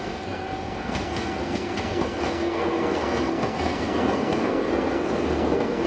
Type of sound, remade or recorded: remade